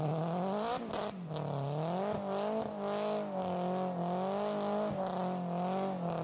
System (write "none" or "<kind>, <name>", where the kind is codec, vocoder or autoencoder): none